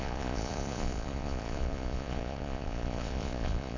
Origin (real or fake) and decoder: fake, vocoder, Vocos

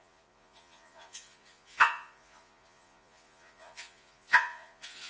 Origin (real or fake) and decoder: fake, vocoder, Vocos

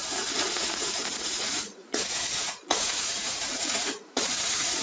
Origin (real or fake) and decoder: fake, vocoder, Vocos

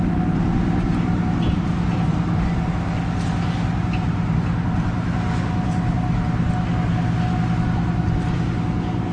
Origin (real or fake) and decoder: real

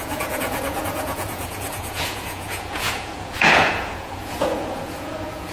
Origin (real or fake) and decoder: fake, vocoder, Vocos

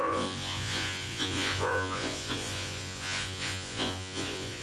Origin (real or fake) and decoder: fake, vocoder, Vocos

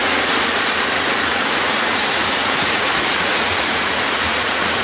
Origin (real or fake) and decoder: fake, vocoder, Vocos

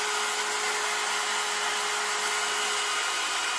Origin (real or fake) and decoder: real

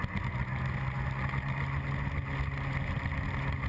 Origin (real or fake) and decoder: real